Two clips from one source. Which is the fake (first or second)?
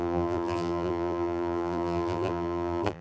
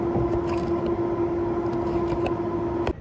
first